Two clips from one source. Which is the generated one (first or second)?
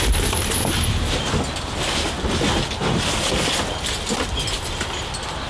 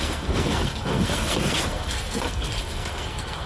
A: second